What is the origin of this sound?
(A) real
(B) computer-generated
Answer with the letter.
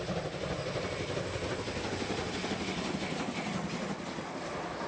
A